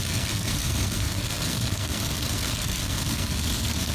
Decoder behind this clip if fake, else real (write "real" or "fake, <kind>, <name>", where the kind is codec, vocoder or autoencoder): fake, codec, SNAC